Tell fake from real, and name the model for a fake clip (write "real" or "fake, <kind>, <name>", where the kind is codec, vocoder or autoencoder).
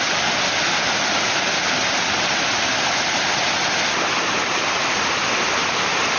real